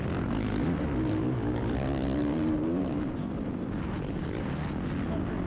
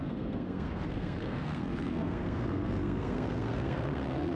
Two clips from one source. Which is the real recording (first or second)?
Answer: first